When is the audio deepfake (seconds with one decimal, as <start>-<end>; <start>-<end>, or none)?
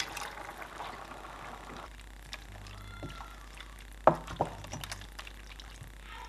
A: none